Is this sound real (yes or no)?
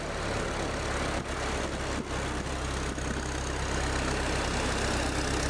yes